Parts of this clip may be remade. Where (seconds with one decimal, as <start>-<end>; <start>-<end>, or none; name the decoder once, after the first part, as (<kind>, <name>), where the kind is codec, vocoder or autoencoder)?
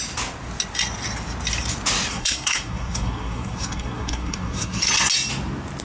2.1-4.8 (codec, SNAC)